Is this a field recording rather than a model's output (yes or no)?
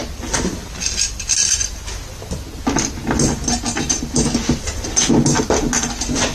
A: yes